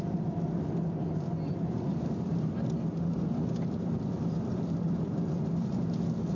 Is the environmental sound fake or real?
real